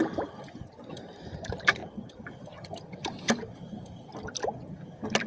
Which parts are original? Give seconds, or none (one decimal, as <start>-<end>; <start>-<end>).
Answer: 4.1-5.3